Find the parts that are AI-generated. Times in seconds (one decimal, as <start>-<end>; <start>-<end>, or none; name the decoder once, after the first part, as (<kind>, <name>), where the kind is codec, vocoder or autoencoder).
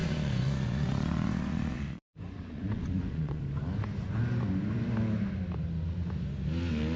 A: 0.0-3.4 (vocoder, Vocos)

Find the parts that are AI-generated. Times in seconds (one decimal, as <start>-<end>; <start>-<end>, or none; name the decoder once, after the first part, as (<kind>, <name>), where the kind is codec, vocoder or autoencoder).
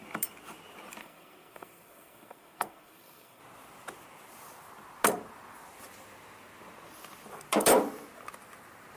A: 1.0-3.4 (codec, SNAC)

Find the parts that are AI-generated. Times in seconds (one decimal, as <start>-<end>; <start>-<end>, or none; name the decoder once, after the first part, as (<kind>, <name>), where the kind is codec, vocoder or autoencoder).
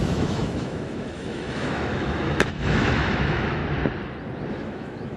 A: 0.0-3.6 (autoencoder, DAC-VAE); 4.5-5.2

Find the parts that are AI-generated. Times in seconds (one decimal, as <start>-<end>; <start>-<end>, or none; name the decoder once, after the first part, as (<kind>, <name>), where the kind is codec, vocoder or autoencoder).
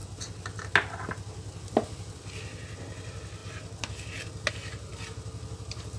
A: none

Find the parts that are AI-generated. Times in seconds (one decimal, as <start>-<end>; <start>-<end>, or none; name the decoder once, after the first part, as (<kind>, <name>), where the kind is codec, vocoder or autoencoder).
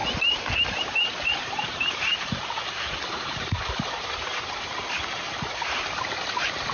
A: 0.8-2.1 (vocoder, BigVGAN v2); 2.7-6.7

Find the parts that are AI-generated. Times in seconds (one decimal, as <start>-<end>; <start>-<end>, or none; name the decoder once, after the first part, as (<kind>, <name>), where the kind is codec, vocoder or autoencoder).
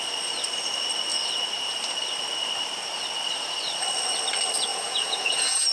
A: 4.7-5.7 (vocoder, Vocos)